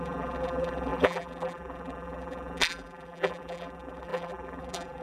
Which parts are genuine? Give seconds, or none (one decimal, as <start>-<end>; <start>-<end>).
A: none